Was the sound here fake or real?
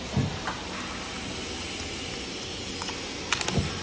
real